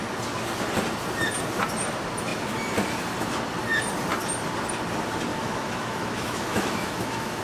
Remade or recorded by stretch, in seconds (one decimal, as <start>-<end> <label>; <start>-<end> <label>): 0.0-5.3 recorded; 5.3-7.4 remade